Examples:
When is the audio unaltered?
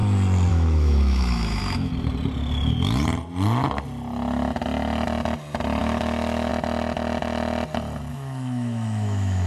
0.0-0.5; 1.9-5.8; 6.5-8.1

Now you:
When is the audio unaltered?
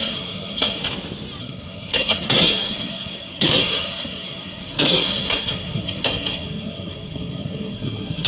0.8-1.4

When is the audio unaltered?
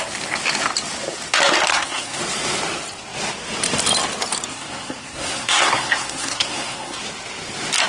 0.0-1.7; 2.2-4.5; 7.0-7.9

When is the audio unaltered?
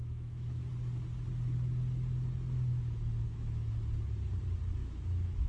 0.7-2.7; 3.7-4.8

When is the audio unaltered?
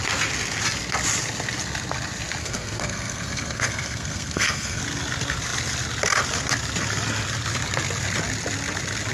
0.0-2.4; 4.8-9.1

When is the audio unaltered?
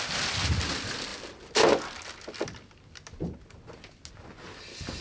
0.0-5.0